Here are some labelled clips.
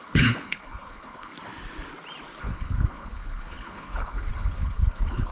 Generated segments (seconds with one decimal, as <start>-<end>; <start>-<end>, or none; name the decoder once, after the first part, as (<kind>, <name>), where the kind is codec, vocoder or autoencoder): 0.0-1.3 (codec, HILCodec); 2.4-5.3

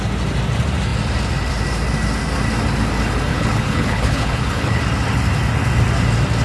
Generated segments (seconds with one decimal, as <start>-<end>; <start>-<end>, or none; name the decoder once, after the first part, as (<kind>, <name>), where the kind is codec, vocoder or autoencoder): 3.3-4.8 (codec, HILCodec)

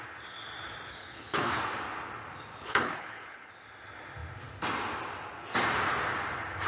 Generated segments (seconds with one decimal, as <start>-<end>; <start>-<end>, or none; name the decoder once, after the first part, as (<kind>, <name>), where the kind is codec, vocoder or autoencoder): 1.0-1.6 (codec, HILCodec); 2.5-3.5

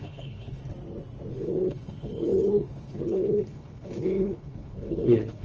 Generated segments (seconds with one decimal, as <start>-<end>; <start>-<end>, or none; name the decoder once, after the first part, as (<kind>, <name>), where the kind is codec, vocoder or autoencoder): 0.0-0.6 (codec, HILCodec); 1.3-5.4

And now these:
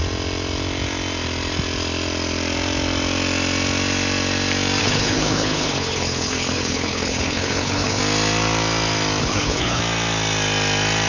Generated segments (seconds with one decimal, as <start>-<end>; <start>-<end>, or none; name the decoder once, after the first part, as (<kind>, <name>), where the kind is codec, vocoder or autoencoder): 4.8-8.0 (codec, HILCodec); 9.2-9.8

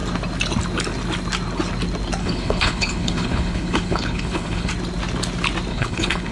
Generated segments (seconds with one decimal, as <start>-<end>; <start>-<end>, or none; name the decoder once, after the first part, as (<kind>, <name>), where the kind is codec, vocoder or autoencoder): 2.2-4.7 (codec, HILCodec); 5.7-6.3

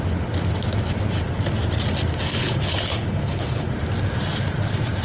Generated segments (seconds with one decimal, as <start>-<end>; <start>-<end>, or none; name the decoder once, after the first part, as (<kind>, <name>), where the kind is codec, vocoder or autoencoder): 2.3-3.7 (codec, HILCodec)

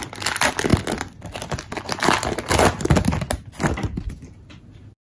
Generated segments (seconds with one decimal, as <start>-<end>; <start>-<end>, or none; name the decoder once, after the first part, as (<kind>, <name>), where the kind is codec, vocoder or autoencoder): none